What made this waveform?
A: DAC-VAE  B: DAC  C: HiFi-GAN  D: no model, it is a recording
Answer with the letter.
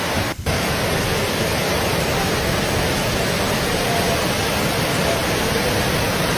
D